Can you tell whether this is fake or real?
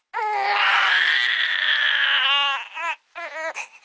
real